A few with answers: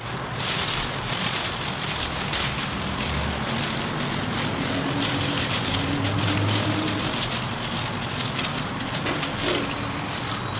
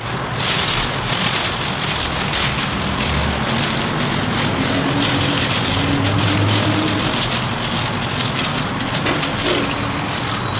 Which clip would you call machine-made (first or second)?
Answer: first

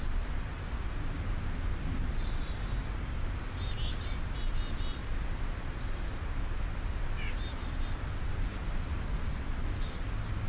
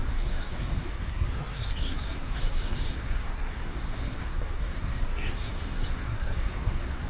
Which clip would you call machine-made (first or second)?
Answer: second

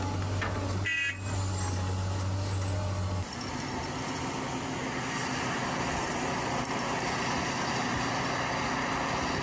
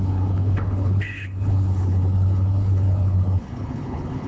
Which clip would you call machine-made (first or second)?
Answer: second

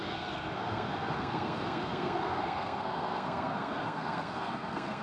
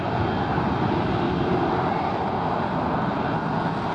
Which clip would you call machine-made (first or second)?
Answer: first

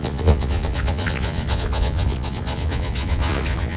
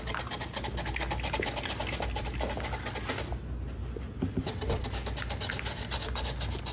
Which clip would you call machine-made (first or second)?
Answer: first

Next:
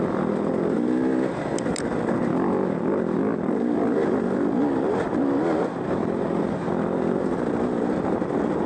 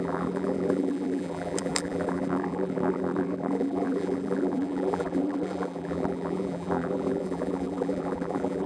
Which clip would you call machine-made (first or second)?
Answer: second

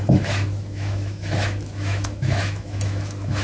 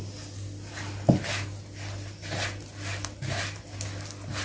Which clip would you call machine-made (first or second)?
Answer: first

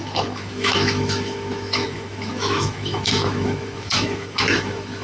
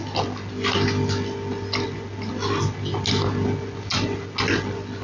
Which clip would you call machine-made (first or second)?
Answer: first